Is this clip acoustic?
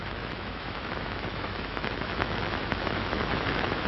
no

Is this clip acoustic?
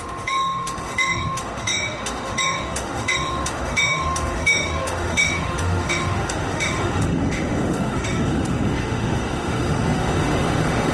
no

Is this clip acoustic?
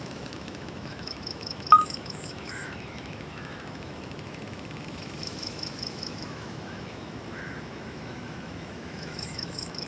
no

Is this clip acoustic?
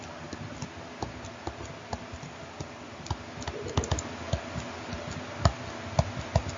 yes